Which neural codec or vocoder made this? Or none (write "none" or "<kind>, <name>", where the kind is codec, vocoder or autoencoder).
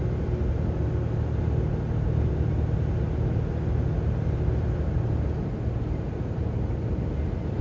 none